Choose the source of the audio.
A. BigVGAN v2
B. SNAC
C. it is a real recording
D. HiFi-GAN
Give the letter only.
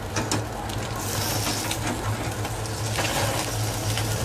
C